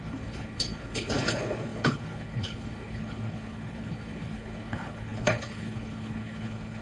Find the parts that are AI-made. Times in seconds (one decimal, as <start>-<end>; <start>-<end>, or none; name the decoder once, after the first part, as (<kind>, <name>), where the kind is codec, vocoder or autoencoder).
0.0-6.8 (codec, HILCodec)